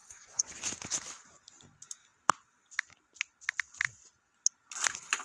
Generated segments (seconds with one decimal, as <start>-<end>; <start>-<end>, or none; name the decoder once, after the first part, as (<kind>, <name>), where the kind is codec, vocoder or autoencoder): 0.0-0.6 (vocoder, Vocos)